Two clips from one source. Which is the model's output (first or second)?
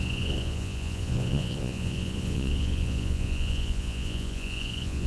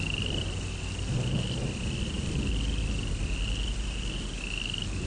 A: first